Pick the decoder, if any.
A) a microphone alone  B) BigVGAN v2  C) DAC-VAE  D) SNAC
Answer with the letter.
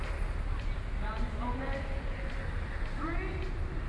A